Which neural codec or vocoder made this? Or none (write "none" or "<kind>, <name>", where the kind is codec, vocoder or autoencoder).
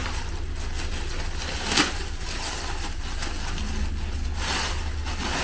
none